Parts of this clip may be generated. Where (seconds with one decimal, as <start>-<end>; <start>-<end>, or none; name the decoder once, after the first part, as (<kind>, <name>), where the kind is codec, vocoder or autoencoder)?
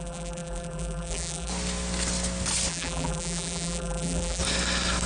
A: 0.0-1.5 (vocoder, BigVGAN v2); 2.7-4.4